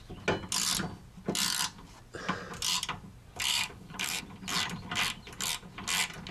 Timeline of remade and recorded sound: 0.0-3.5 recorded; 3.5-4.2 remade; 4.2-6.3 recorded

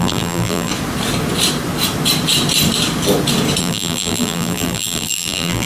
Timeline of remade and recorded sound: 0.0-0.7 remade; 0.7-3.6 recorded; 3.6-5.7 remade

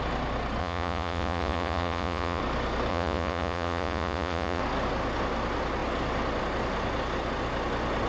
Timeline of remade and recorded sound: 0.0-0.6 recorded; 0.6-2.4 remade; 2.4-2.9 recorded; 2.9-4.6 remade; 4.6-8.1 recorded